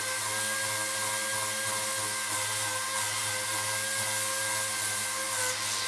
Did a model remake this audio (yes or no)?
no